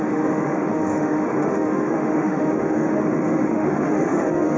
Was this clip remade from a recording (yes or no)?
yes